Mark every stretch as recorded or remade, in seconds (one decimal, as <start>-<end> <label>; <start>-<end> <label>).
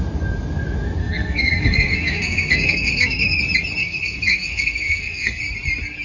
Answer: 0.0-1.0 recorded; 1.0-3.4 remade; 3.4-3.8 recorded; 3.8-5.4 remade; 5.4-6.0 recorded